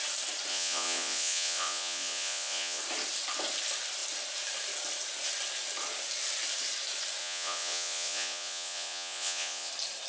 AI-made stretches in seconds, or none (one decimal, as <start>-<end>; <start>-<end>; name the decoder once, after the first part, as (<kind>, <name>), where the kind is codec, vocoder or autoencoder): 0.5-2.8 (vocoder, Vocos); 7.2-9.7